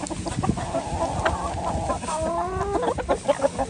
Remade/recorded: recorded